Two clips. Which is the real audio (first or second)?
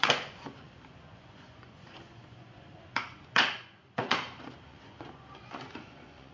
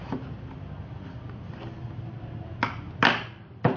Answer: second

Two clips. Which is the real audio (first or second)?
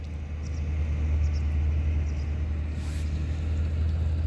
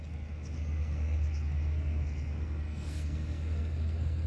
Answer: first